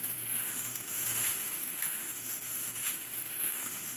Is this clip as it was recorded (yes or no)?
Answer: no